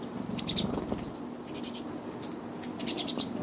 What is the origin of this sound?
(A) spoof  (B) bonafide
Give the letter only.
B